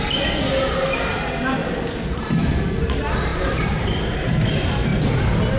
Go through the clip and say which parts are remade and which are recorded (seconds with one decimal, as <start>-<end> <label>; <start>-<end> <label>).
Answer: 0.0-1.6 recorded; 1.6-2.3 remade; 2.3-3.3 recorded; 3.3-4.0 remade; 4.0-5.6 recorded